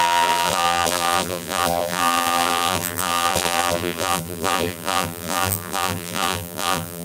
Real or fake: fake